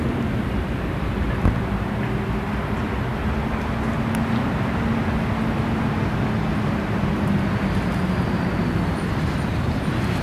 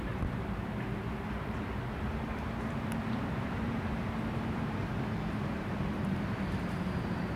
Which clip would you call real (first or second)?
first